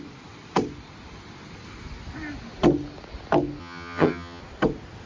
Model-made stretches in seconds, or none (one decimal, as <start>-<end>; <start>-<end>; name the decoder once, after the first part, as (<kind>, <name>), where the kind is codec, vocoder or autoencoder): 3.6-4.4 (vocoder, HiFi-GAN)